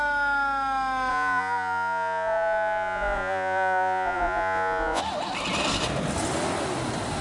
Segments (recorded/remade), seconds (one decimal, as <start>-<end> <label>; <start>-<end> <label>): 0.0-1.1 recorded; 1.1-5.0 remade; 5.0-7.2 recorded